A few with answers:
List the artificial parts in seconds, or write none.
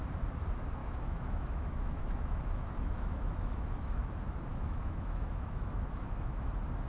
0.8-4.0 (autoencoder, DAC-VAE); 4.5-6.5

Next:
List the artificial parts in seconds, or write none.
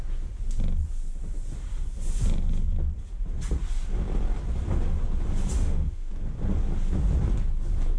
5.6-6.1 (autoencoder, DAC-VAE)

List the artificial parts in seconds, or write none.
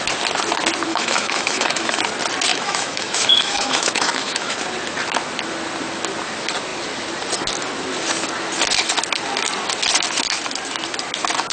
0.9-2.0 (autoencoder, DAC-VAE); 2.5-4.6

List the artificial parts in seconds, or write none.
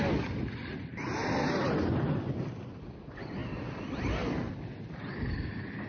none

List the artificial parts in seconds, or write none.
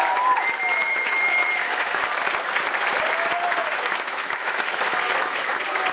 0.7-2.0 (autoencoder, DAC-VAE); 3.6-5.5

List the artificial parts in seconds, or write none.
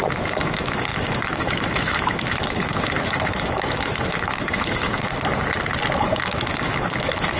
0.0-5.1 (autoencoder, DAC-VAE); 6.0-7.4